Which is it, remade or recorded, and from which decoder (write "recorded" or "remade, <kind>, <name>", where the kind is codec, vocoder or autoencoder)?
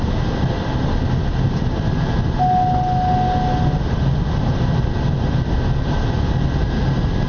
recorded